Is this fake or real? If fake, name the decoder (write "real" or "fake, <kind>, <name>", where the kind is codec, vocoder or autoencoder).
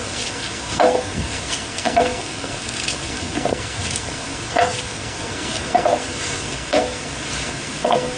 fake, codec, SNAC